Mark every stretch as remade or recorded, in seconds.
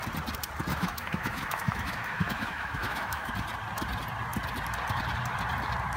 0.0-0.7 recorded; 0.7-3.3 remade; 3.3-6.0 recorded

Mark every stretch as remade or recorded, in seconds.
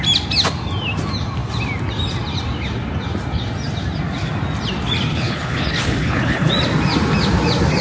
0.0-5.1 recorded; 5.1-6.5 remade; 6.5-7.8 recorded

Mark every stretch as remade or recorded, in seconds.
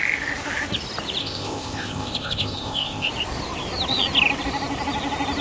0.0-1.2 recorded; 1.2-3.1 remade; 3.1-5.4 recorded